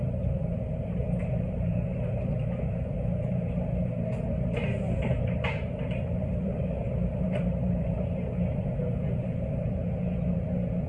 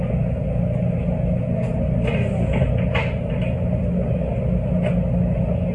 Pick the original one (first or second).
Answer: second